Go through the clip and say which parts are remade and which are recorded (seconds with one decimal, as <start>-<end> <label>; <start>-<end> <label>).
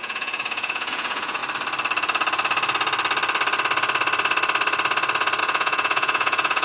0.0-1.4 remade; 1.4-5.4 recorded; 5.4-6.6 remade